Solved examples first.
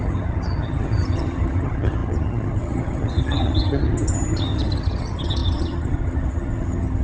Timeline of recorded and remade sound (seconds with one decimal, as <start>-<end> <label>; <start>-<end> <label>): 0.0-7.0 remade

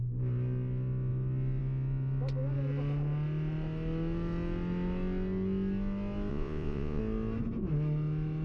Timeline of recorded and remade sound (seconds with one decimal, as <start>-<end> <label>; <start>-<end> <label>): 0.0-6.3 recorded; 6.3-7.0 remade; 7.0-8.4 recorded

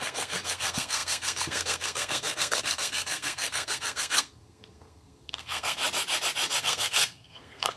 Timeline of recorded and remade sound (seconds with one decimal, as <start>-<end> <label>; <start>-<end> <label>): 0.0-5.8 remade; 5.8-6.6 recorded; 6.6-7.8 remade

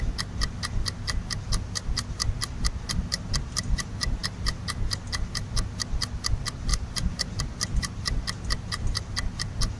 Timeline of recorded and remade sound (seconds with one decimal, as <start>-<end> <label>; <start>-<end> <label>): 0.0-9.8 recorded